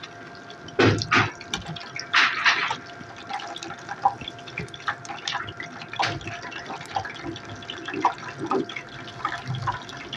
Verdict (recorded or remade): recorded